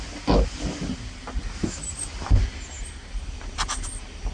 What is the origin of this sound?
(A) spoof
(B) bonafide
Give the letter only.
B